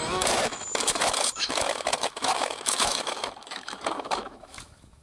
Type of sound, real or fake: fake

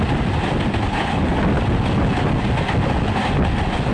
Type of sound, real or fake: real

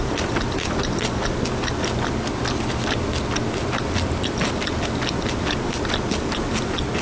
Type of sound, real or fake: real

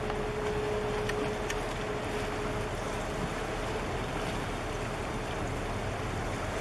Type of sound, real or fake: real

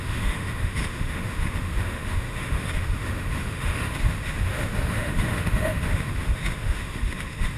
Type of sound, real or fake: fake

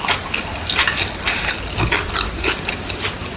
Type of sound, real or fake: real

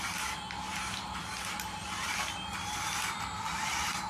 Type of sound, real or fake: real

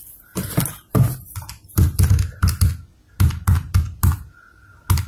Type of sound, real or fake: real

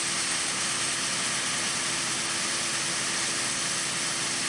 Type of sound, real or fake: real